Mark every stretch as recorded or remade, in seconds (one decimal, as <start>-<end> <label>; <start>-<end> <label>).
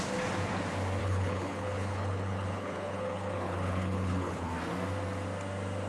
0.0-1.0 recorded; 1.0-4.5 remade; 4.5-5.9 recorded